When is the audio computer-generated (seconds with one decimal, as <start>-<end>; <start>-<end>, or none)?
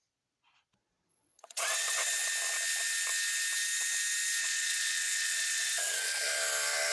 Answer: 1.1-2.1; 4.4-6.1